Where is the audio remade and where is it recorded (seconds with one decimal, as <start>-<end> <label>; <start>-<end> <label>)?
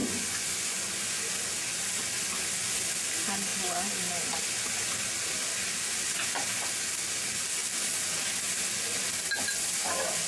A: 0.0-1.3 remade; 1.3-10.3 recorded